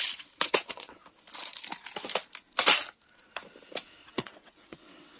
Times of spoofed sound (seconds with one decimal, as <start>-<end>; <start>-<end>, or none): 0.0-1.0; 4.1-5.2